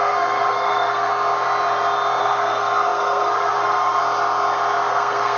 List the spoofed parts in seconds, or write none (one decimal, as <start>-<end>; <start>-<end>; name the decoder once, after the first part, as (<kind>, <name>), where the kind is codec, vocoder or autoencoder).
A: 0.0-1.1 (codec, SNAC); 2.2-4.0; 4.9-5.4